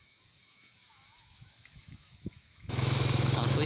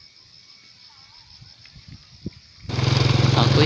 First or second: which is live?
second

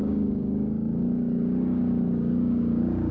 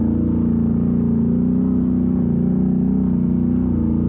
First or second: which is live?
second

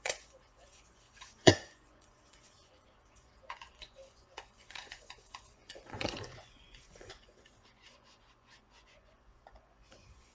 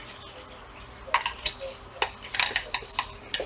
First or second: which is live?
second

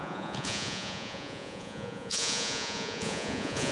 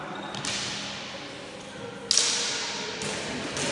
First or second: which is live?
second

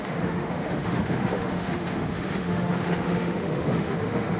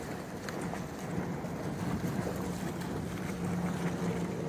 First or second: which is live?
second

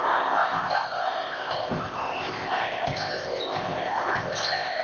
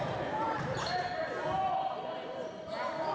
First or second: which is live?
second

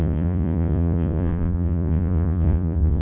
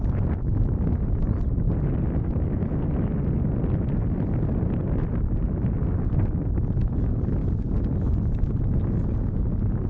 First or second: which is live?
second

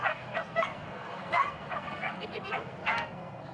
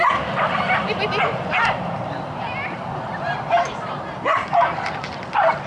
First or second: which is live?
second